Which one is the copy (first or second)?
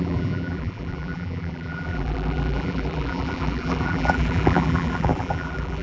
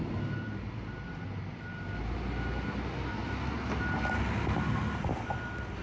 first